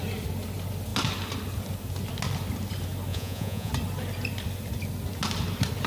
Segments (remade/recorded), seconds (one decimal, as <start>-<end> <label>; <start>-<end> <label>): 0.0-3.1 recorded; 3.1-3.7 remade; 3.7-5.9 recorded